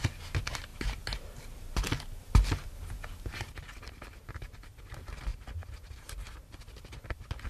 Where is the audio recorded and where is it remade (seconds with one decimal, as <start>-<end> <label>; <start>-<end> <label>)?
0.0-7.5 recorded